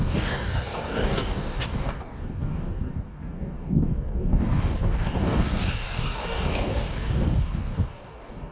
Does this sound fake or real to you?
fake